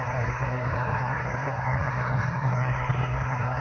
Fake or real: fake